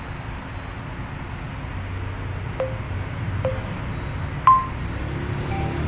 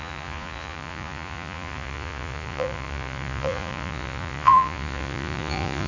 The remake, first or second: second